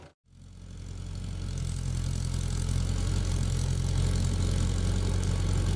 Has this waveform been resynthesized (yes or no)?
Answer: no